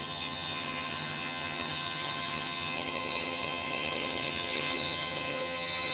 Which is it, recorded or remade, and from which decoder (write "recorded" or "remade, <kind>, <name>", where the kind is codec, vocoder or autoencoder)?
remade, vocoder, HiFi-GAN